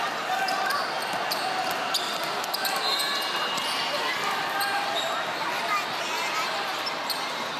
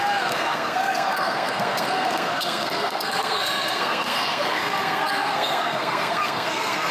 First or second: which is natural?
first